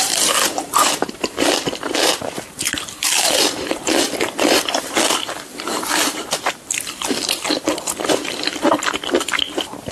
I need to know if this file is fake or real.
fake